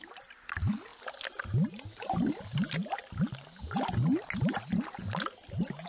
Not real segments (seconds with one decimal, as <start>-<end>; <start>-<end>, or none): none